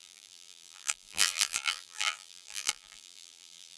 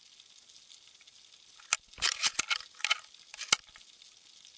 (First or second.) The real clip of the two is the second